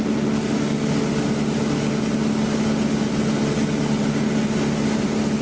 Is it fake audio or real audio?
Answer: real